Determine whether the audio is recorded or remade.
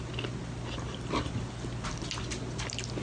recorded